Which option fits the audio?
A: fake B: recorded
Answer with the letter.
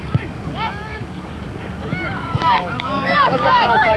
A